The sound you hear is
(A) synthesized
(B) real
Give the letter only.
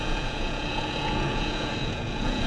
A